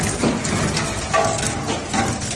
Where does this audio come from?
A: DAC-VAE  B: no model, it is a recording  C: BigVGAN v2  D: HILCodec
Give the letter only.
B